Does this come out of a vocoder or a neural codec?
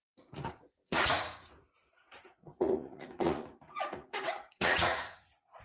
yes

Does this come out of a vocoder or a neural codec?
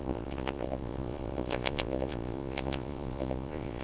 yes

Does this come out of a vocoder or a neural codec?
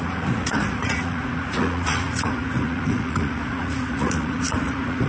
yes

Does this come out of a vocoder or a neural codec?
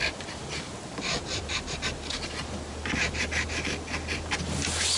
no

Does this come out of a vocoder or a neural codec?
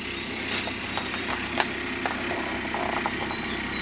no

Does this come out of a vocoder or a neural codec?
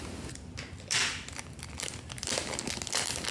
no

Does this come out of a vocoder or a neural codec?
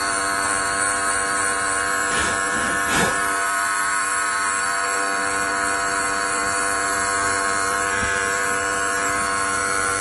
yes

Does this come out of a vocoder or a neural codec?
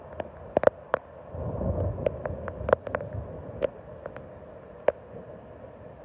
no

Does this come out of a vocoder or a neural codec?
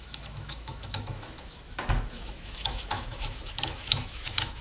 yes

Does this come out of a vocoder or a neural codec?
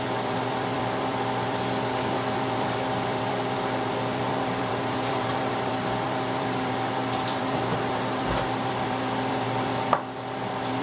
yes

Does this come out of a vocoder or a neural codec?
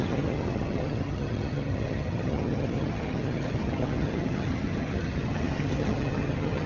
yes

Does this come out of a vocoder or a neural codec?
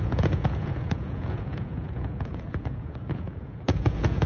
yes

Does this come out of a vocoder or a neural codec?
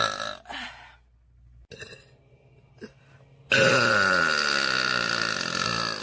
no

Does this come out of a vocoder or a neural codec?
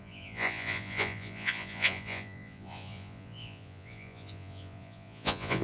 yes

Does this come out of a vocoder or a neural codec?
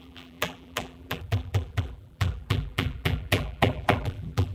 yes